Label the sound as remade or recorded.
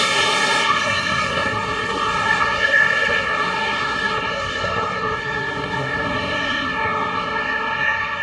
remade